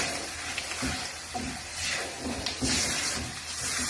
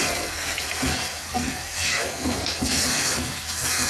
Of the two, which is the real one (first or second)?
first